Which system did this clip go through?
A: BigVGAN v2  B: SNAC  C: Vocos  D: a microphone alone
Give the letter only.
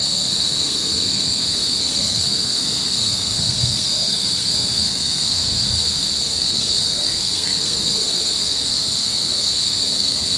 B